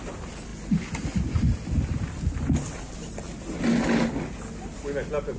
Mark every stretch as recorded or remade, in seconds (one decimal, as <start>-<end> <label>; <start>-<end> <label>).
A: 0.0-5.4 recorded